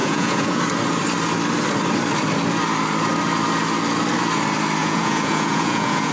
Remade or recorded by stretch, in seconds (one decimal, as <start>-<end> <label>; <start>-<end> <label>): 0.0-0.6 remade; 0.6-4.8 recorded; 4.8-6.1 remade